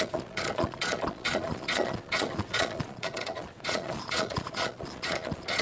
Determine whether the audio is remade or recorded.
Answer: remade